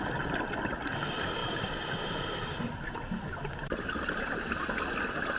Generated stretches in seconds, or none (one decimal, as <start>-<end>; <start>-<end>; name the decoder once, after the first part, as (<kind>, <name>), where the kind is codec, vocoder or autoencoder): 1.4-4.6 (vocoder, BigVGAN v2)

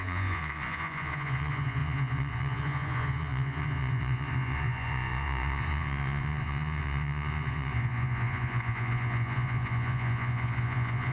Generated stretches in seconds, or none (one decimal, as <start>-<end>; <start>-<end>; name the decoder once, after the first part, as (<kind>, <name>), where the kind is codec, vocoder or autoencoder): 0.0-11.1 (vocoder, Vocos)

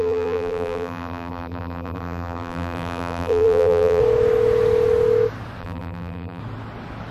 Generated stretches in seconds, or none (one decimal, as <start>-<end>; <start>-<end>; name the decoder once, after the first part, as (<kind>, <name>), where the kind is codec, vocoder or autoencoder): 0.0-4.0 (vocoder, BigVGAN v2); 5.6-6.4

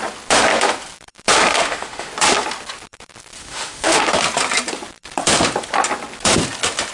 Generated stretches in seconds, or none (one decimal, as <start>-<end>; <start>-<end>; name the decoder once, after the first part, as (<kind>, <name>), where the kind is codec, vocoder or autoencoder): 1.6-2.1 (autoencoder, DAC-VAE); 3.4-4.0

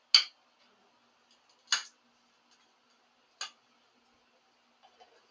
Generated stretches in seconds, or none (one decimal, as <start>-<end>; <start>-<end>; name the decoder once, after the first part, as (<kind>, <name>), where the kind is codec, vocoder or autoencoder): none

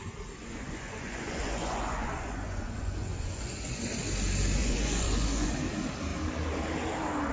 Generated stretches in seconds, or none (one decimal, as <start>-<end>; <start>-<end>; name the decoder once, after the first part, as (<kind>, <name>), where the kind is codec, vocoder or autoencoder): 0.4-3.8 (vocoder, Vocos); 4.6-5.5